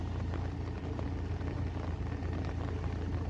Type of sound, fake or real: real